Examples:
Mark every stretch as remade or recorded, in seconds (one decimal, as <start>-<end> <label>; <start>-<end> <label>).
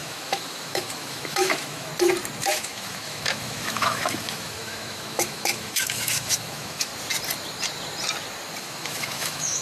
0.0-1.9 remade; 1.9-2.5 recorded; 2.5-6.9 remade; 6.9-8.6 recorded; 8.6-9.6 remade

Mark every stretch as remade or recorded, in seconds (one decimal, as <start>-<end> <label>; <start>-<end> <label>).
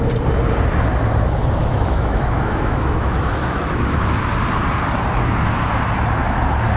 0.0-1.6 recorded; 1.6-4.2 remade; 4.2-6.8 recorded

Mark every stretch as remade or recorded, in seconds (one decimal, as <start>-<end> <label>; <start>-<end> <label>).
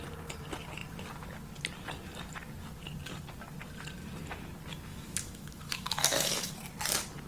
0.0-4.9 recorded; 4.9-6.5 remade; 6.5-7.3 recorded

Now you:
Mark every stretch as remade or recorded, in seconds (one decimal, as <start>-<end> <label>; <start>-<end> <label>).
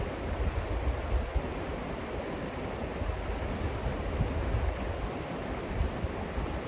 0.0-6.7 recorded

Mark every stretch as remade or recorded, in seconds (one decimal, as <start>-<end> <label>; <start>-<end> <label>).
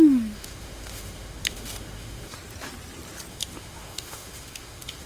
0.0-2.3 remade; 2.3-3.3 recorded; 3.3-5.1 remade